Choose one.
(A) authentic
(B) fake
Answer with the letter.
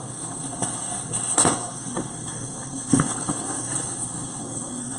B